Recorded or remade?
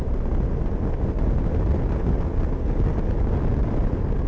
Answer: recorded